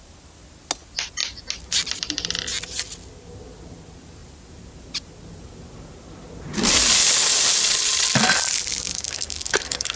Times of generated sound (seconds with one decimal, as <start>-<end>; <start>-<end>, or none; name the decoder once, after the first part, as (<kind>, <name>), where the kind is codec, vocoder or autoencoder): 8.9-10.0 (codec, SNAC)